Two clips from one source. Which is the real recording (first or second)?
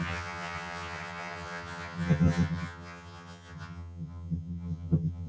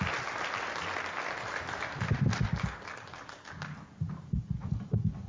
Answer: second